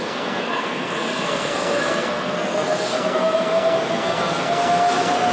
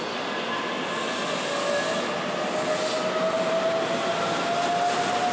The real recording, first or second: second